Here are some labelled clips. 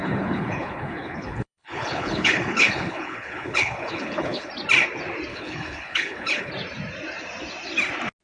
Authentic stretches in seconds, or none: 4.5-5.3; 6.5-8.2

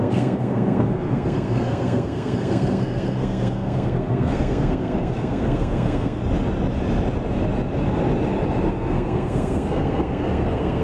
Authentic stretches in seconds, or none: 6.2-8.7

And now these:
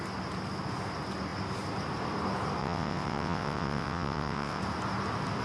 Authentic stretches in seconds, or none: 0.0-2.6; 4.6-5.4

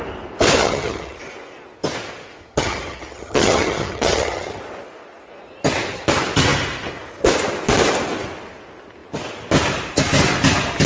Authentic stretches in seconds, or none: 0.0-0.6; 1.2-2.4; 4.6-10.9

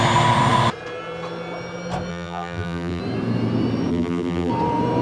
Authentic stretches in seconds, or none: 0.0-2.1; 3.0-3.9; 4.5-5.0